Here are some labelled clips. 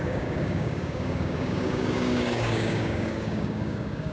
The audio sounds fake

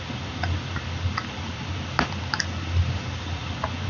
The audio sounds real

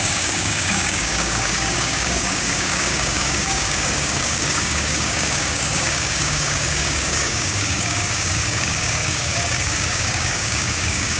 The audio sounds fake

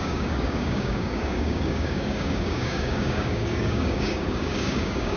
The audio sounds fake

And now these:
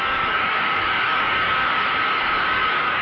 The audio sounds fake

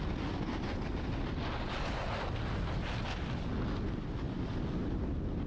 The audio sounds real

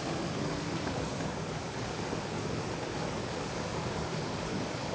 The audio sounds fake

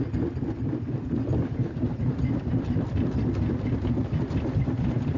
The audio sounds real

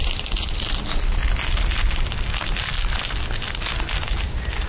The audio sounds real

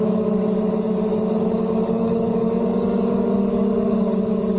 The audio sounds fake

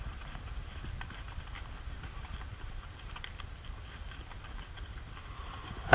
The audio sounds real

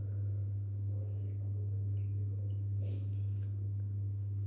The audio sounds fake